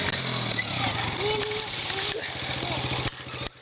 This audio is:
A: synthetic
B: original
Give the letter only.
B